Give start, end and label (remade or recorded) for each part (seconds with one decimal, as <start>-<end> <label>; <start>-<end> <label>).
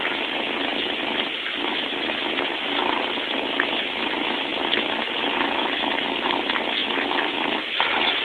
0.0-8.2 recorded